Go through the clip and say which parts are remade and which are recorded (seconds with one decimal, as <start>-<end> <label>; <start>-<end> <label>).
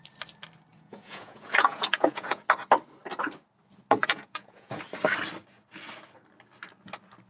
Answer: 0.0-0.7 recorded; 0.7-2.4 remade; 2.4-4.0 recorded; 4.0-4.9 remade; 4.9-7.3 recorded